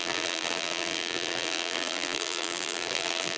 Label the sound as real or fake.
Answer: fake